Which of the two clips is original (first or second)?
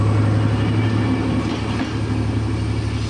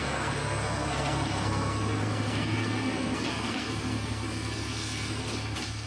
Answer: first